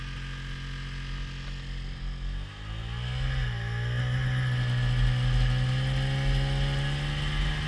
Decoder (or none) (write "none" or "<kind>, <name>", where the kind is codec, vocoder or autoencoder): none